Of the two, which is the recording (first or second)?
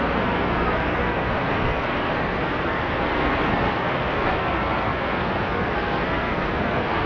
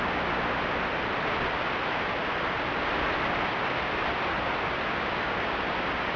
second